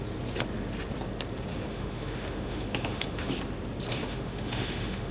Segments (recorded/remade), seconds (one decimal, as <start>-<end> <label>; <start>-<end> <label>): 0.0-1.5 recorded; 1.5-3.3 remade; 3.3-3.9 recorded; 3.9-5.1 remade